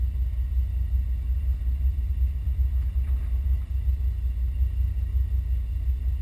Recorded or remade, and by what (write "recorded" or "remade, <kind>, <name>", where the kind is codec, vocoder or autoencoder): recorded